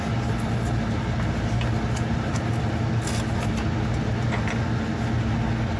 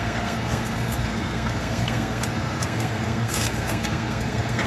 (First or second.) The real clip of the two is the first